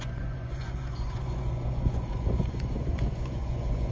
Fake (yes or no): yes